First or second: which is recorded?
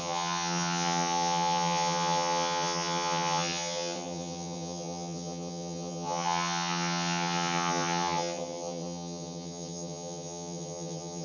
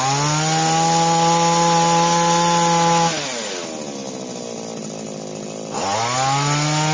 second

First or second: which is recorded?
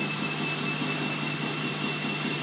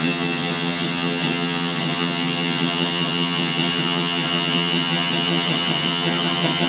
first